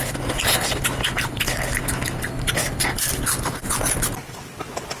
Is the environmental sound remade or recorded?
recorded